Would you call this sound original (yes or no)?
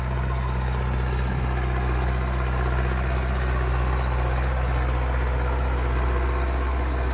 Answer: yes